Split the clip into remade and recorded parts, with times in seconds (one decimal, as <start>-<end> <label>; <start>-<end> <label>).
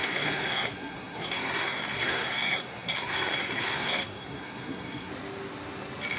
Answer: 0.0-5.1 remade; 5.1-6.2 recorded